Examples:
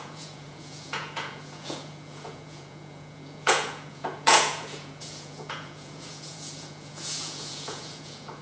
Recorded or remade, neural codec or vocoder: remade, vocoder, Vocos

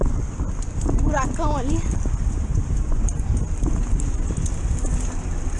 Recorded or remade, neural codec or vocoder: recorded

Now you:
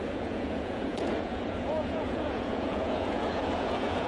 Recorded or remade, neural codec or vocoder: remade, vocoder, Vocos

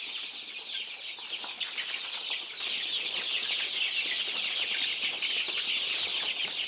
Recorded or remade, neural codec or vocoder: recorded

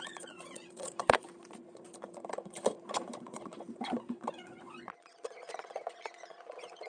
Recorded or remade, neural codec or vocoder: remade, vocoder, Vocos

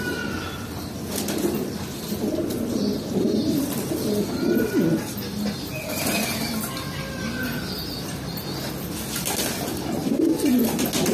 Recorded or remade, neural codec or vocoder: recorded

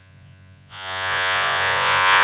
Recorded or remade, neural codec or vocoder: remade, vocoder, Vocos